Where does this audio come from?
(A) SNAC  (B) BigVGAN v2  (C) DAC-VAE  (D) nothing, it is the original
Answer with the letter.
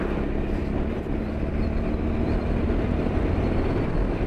D